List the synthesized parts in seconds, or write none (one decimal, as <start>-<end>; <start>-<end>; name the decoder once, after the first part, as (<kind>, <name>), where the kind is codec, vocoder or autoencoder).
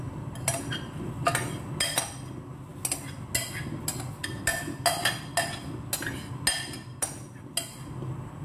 none